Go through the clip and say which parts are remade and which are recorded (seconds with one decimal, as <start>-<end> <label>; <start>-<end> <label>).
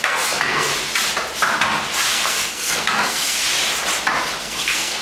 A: 0.0-0.7 remade; 0.7-2.1 recorded; 2.1-3.4 remade; 3.4-4.4 recorded; 4.4-5.0 remade